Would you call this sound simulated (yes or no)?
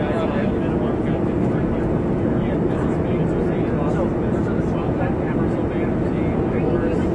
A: no